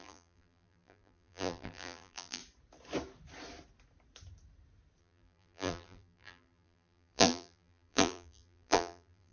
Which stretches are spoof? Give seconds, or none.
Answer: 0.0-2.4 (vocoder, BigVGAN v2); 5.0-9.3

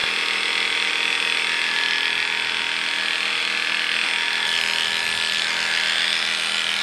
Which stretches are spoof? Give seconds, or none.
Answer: 0.0-0.9 (vocoder, BigVGAN v2)